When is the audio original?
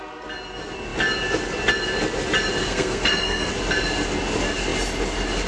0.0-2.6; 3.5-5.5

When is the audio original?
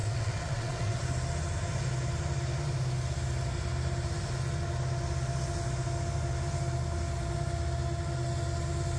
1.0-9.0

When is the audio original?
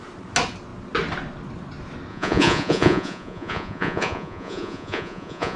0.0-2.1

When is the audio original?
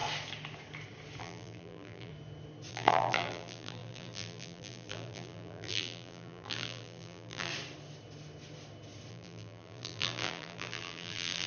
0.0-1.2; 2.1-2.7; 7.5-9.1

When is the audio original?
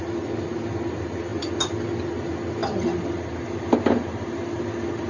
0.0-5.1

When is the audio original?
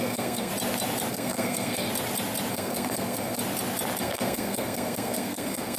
0.5-1.1; 1.9-2.5; 3.4-4.0